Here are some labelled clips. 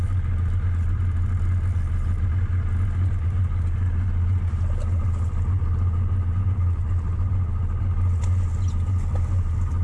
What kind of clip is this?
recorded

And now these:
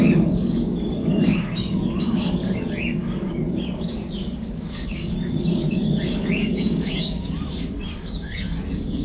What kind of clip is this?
remade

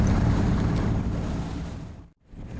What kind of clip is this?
remade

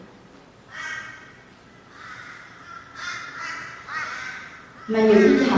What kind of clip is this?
recorded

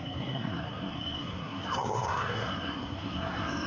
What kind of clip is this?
remade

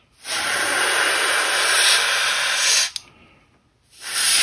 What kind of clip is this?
recorded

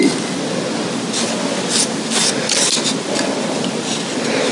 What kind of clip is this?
recorded